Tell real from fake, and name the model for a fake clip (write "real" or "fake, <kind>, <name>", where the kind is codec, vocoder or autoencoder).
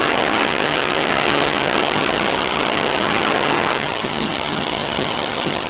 fake, vocoder, HiFi-GAN